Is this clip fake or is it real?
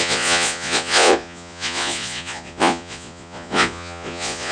fake